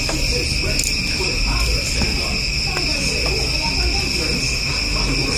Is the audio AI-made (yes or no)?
no